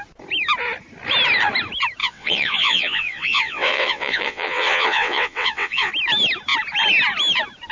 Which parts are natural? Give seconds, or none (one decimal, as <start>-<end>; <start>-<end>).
0.0-2.0; 5.9-7.7